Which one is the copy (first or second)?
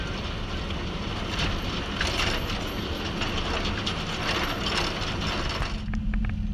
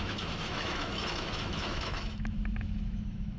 second